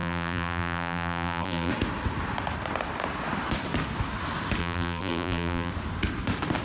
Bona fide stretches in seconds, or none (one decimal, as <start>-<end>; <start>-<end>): 1.7-4.6; 5.7-6.6